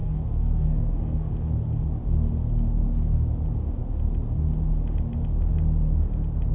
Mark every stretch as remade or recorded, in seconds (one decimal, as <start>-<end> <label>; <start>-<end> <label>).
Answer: 0.0-1.3 remade; 1.3-6.5 recorded